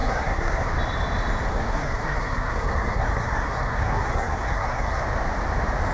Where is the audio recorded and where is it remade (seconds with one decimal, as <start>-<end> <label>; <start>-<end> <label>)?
0.0-0.7 remade; 0.7-1.5 recorded; 1.5-5.0 remade; 5.0-5.9 recorded